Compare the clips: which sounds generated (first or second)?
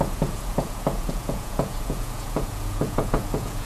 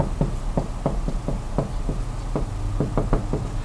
first